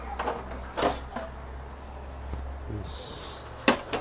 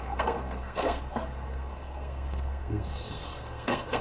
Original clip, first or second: first